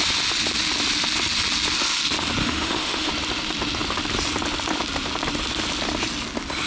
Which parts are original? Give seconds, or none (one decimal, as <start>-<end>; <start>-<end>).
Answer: 0.0-2.4; 3.1-6.7